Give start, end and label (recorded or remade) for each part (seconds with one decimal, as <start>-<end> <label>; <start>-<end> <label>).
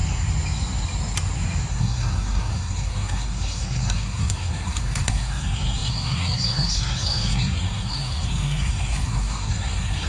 0.0-1.7 recorded; 1.7-10.1 remade